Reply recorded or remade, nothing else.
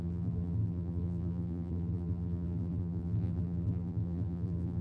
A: remade